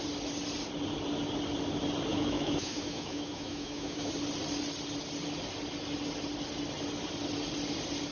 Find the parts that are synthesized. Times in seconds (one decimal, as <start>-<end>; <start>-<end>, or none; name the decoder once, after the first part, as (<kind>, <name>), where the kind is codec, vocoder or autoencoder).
2.1-4.1 (autoencoder, DAC-VAE)